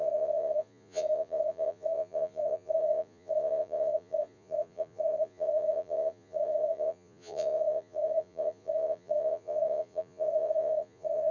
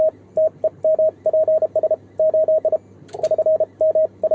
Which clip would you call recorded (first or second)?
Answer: second